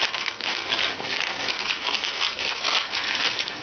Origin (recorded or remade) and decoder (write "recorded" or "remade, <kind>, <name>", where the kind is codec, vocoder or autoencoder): remade, codec, SNAC